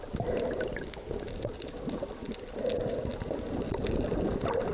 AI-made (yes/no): no